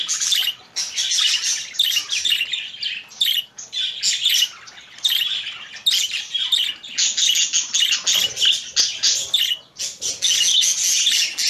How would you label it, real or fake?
real